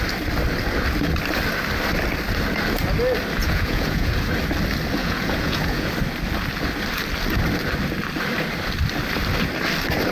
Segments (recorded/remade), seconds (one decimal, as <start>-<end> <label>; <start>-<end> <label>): 0.0-3.4 recorded; 3.4-4.1 remade; 4.1-5.0 recorded; 5.0-5.9 remade; 5.9-10.1 recorded